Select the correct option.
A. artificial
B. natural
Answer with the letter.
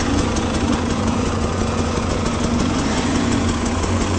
A